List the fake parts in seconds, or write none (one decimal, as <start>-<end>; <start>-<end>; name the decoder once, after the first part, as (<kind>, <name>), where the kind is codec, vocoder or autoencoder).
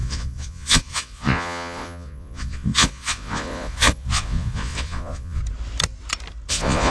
0.0-5.4 (vocoder, Vocos); 6.5-6.9